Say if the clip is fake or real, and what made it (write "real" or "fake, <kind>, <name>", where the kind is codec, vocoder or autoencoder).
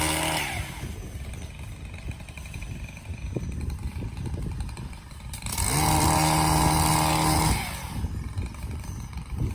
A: real